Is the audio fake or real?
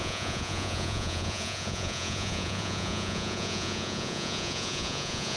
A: fake